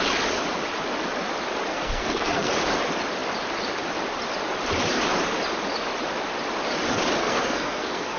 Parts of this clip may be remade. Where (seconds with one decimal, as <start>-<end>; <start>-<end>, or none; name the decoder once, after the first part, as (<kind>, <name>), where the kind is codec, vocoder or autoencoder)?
1.7-2.5 (codec, SNAC); 7.2-8.2

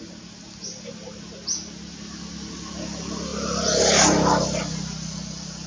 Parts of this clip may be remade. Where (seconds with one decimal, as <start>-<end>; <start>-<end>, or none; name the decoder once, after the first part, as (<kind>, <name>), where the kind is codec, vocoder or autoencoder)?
none

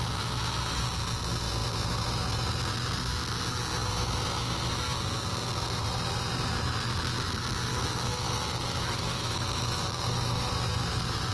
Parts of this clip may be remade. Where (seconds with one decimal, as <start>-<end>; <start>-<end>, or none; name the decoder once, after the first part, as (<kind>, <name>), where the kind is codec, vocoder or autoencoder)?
7.7-10.5 (autoencoder, DAC-VAE)